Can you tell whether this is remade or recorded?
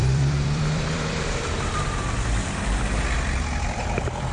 remade